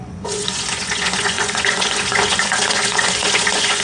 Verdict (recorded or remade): remade